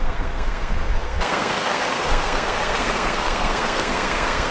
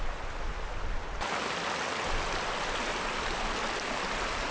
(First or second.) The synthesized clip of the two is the first